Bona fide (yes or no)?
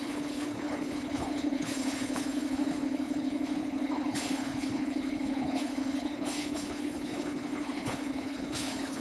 no